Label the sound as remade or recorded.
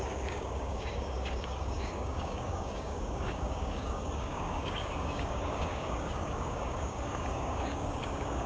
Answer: remade